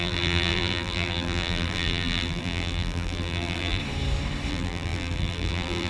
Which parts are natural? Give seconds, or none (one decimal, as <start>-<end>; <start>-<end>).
3.8-4.5

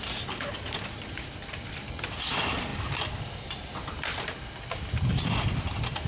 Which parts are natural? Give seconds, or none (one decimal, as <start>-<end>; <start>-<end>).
0.0-2.7; 4.3-6.1

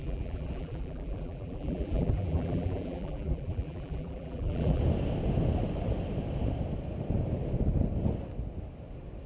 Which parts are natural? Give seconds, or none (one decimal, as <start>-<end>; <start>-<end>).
4.8-9.3

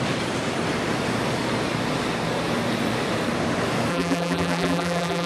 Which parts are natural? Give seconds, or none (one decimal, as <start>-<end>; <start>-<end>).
0.0-3.9

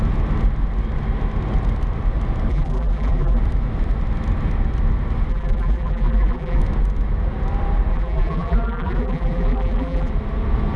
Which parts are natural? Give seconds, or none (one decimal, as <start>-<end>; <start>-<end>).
0.0-2.5; 3.4-5.3; 6.6-7.9; 10.1-10.8

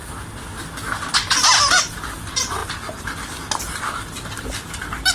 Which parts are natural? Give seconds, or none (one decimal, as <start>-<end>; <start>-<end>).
0.0-5.1